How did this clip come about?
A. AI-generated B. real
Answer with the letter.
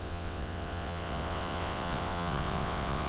A